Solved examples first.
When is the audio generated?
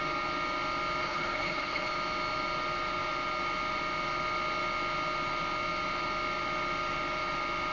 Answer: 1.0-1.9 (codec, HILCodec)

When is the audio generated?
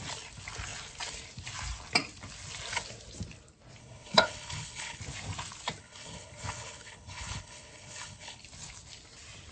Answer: 3.8-5.0 (codec, HILCodec); 5.8-8.4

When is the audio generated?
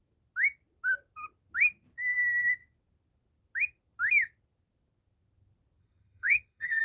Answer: 5.8-6.8 (codec, HILCodec)